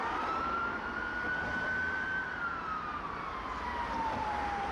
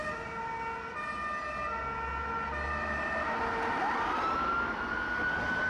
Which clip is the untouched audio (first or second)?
second